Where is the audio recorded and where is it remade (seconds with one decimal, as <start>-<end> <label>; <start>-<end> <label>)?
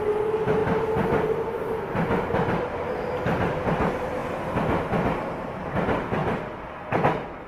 0.0-7.5 recorded